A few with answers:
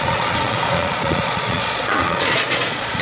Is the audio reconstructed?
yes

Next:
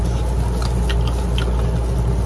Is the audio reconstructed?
no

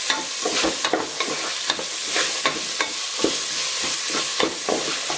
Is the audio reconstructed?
no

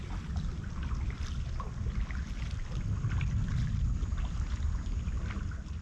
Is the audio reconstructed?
no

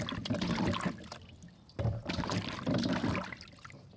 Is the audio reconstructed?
no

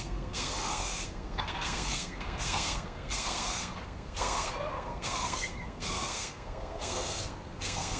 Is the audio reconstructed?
yes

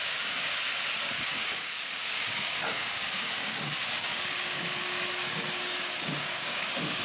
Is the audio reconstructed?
yes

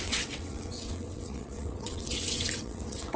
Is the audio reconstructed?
yes